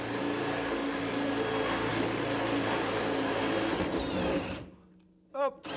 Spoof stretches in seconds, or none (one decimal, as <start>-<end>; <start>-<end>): none